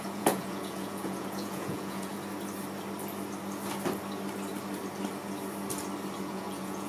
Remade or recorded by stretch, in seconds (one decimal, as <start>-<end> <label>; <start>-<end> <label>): 0.0-2.1 remade; 2.1-6.2 recorded; 6.2-6.9 remade